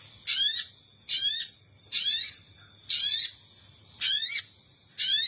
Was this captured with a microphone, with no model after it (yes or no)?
yes